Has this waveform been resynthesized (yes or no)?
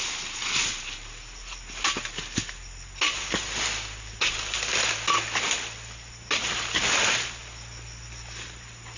no